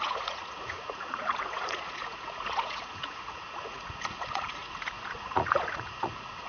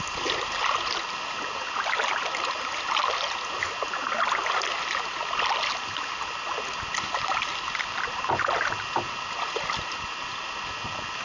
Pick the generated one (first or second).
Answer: first